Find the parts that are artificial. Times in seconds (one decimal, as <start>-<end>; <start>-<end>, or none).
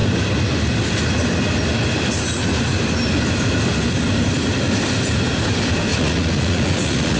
5.9-7.2